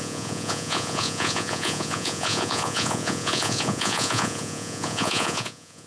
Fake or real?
fake